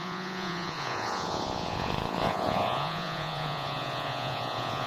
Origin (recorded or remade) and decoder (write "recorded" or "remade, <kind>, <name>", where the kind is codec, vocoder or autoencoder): remade, vocoder, Vocos